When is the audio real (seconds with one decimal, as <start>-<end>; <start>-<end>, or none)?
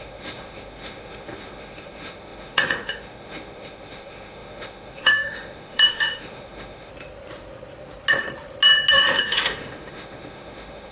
6.9-8.9